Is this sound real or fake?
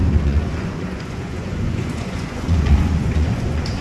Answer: fake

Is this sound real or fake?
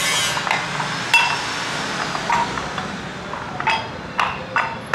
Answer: real